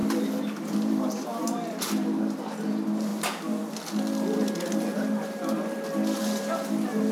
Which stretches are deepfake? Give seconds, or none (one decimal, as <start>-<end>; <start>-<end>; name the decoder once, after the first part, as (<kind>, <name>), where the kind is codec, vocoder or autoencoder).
0.0-2.2 (vocoder, BigVGAN v2)